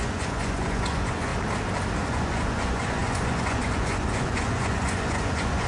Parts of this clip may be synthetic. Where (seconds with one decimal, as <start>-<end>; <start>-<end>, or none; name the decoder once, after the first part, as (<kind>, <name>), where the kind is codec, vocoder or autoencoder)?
0.0-1.3 (vocoder, Vocos); 2.1-5.7